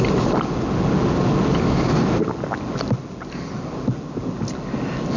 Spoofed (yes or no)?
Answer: no